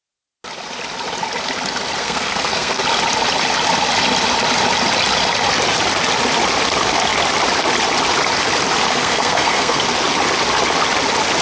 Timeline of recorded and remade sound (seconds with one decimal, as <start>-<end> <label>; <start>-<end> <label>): 0.0-2.0 recorded; 2.0-2.8 remade; 2.8-9.0 recorded; 9.0-9.8 remade; 9.8-11.4 recorded